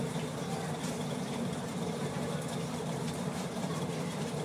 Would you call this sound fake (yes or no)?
yes